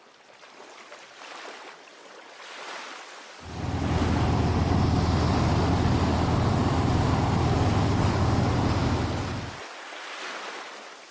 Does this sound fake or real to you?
real